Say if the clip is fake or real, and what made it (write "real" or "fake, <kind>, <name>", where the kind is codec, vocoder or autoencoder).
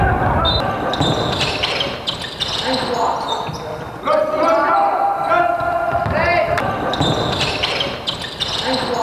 real